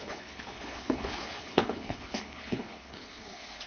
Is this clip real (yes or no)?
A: no